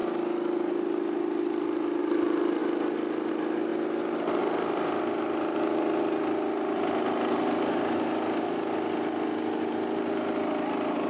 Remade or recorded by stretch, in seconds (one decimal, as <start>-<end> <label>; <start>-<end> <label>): 0.0-11.1 recorded